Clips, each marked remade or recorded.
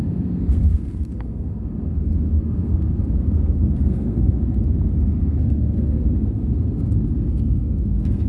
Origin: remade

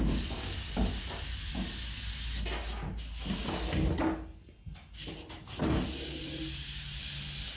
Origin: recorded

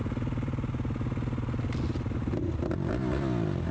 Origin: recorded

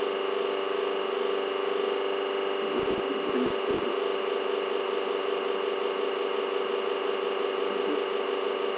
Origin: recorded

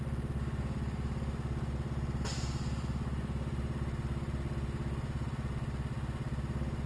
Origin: recorded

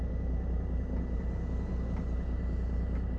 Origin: recorded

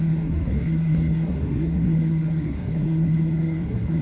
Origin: remade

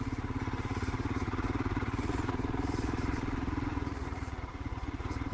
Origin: remade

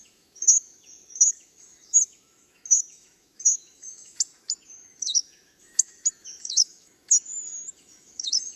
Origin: remade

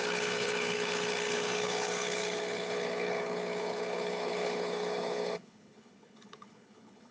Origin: remade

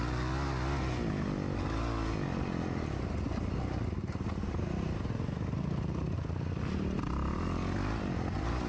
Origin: recorded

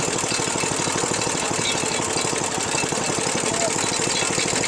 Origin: recorded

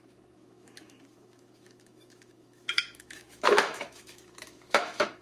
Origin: remade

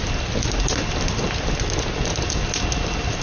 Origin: recorded